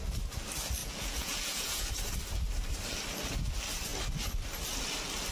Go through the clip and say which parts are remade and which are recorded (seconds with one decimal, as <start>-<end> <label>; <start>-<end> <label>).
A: 0.0-0.8 recorded; 0.8-1.9 remade; 1.9-5.3 recorded